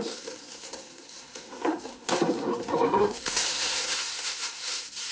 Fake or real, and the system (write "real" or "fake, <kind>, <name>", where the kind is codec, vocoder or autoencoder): fake, codec, SNAC